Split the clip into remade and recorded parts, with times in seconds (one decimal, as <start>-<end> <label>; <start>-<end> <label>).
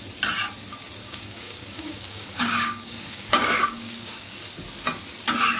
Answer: 0.0-1.0 recorded; 1.0-4.4 remade; 4.4-5.6 recorded